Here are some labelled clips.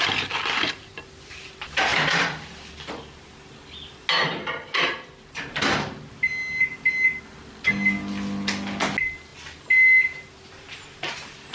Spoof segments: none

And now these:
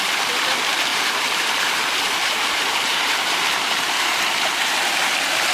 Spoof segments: 0.9-4.2 (vocoder, BigVGAN v2)

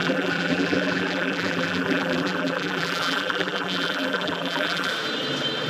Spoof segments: 0.0-4.9 (vocoder, BigVGAN v2)

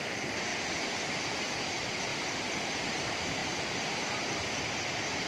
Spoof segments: 2.1-2.6 (vocoder, BigVGAN v2)

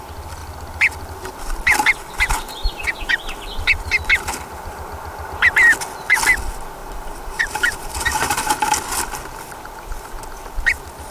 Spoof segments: 2.6-3.1 (vocoder, BigVGAN v2); 6.8-8.5

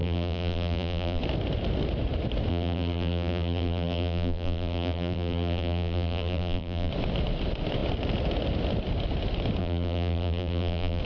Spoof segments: 0.0-1.2 (vocoder, BigVGAN v2); 2.5-6.9; 9.6-11.0

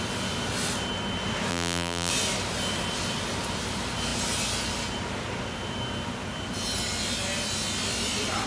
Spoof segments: 1.5-2.1 (vocoder, BigVGAN v2)

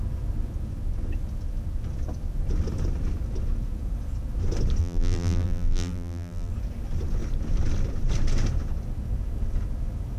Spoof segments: 4.8-6.5 (vocoder, BigVGAN v2)